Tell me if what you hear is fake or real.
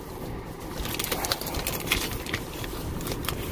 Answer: real